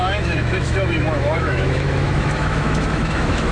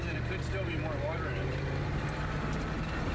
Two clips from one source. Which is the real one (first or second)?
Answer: second